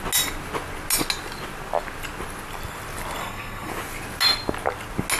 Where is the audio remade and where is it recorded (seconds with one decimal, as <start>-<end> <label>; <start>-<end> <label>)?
0.0-3.2 recorded; 3.2-3.7 remade; 3.7-5.2 recorded